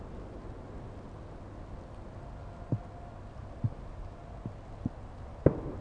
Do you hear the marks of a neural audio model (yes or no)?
no